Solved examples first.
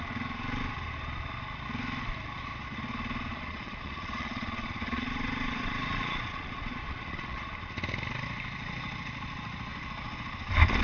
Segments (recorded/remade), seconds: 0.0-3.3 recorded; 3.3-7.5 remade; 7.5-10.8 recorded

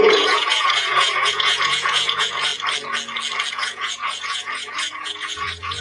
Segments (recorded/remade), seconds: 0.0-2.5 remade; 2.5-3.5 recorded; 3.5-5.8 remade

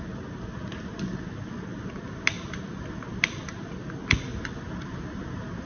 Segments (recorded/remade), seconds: 0.0-5.7 recorded